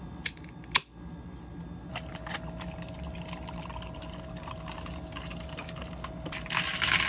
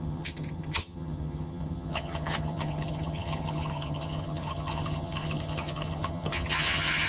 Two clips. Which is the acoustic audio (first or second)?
first